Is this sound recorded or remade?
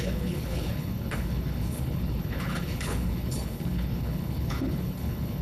remade